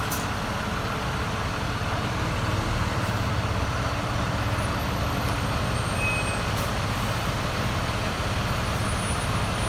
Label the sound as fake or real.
real